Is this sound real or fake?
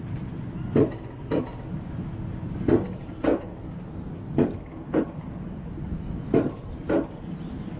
real